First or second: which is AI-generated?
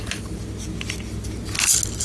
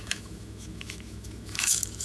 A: second